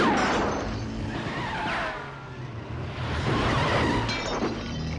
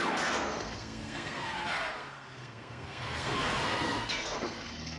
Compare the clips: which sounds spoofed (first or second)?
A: second